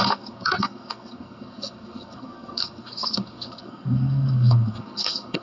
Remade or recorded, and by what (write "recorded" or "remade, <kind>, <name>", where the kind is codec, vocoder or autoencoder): remade, codec, SNAC